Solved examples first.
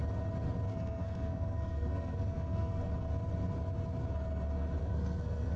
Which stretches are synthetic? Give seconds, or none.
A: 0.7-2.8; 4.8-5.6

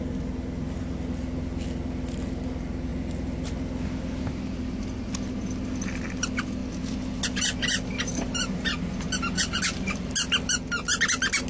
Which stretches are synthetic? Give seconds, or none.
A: none